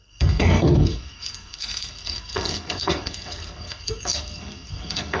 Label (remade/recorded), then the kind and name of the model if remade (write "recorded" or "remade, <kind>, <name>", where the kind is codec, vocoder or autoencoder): remade, codec, SNAC